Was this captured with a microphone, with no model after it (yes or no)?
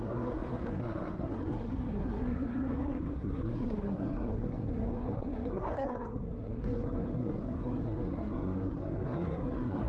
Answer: no